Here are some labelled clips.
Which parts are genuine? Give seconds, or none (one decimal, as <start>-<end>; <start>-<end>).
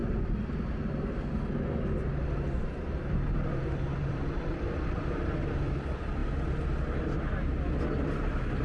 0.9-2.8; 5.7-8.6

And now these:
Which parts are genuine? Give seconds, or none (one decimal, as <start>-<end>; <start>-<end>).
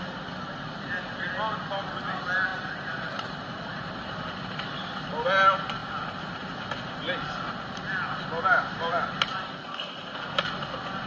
0.0-2.5; 4.6-11.1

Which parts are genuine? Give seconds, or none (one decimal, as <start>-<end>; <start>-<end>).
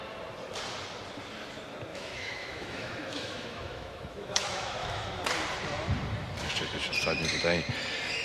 0.0-1.9; 5.2-8.2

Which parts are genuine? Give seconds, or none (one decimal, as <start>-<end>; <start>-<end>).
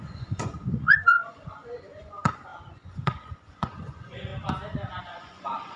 4.3-5.0